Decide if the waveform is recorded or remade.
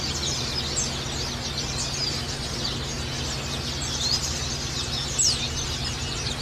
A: recorded